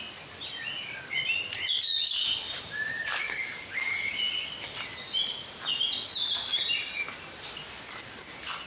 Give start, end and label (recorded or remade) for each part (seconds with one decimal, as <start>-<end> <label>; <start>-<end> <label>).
0.0-2.2 recorded; 2.2-3.0 remade; 3.0-8.7 recorded